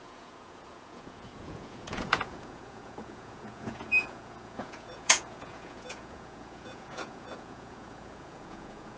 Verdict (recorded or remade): remade